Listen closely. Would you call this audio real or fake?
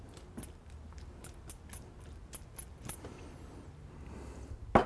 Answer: real